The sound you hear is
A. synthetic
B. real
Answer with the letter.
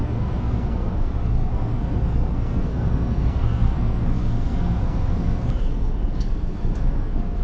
A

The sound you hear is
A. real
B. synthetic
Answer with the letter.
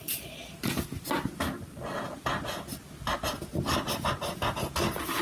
A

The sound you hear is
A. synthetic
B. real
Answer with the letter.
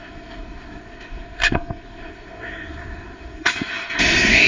A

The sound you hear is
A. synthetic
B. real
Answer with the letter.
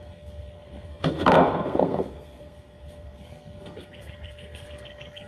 A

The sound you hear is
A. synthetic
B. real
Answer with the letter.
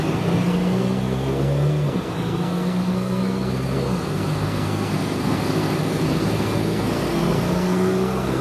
A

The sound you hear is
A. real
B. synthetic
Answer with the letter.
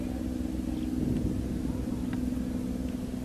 A